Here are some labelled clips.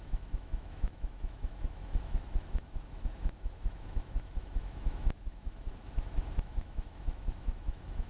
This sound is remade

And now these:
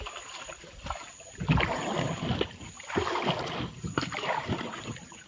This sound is recorded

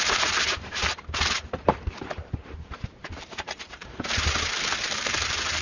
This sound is remade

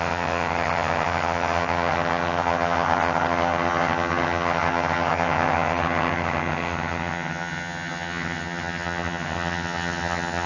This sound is remade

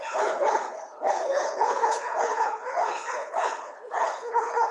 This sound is remade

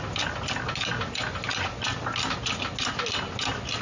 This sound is recorded